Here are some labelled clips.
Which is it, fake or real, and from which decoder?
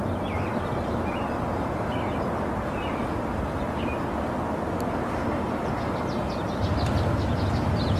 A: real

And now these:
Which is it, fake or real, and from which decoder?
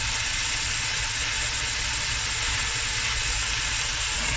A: real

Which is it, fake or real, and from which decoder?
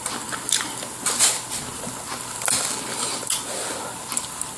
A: real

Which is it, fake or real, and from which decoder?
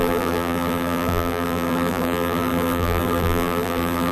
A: fake, vocoder, BigVGAN v2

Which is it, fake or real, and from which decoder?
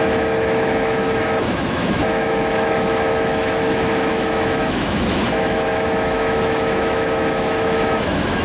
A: fake, autoencoder, DAC-VAE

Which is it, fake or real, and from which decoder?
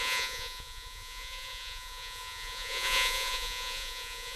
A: fake, vocoder, Vocos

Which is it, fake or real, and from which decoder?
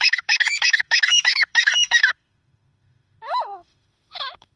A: fake, autoencoder, DAC-VAE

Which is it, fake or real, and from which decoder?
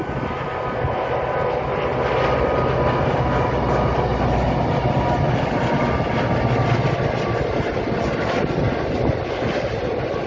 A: real